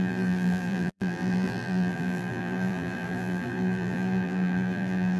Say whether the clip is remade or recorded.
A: remade